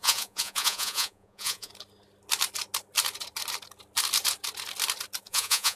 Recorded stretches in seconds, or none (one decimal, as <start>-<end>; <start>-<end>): 1.7-5.2